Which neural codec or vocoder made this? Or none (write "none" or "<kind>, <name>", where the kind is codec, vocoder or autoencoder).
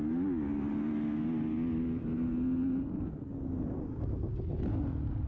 none